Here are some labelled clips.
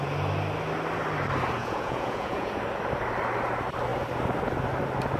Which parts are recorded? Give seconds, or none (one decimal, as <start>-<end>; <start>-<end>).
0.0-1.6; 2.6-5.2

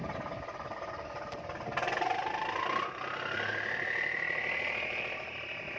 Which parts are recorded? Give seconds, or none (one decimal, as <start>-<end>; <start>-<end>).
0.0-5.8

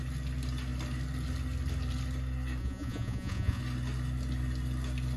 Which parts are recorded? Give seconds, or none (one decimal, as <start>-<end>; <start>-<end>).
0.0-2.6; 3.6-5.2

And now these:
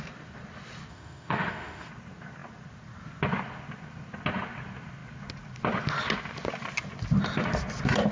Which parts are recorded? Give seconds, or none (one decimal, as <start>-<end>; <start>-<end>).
0.0-0.9; 1.9-8.1

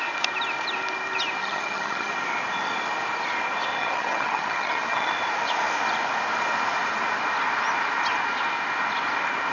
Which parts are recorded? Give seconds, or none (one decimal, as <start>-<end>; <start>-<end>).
0.0-1.4; 2.1-3.8; 5.1-9.5

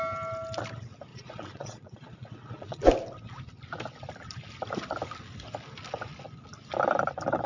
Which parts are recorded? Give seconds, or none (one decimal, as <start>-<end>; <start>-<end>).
0.0-1.1; 2.8-7.5

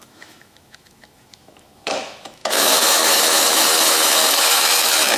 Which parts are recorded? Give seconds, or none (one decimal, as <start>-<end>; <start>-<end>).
none

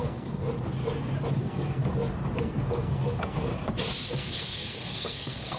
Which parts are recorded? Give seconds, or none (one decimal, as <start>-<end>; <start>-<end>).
0.4-1.4; 1.8-2.4; 3.5-4.1